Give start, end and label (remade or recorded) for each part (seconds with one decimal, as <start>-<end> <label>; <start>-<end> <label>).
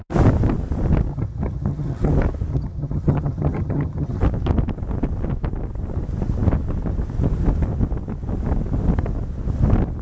0.0-1.1 recorded; 1.1-2.1 remade; 2.1-2.5 recorded; 2.5-4.2 remade; 4.2-10.0 recorded